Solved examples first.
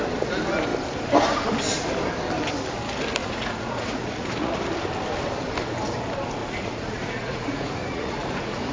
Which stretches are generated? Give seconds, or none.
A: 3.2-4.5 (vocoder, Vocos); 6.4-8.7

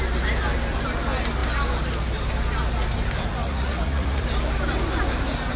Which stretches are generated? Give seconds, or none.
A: 3.4-4.2 (vocoder, Vocos)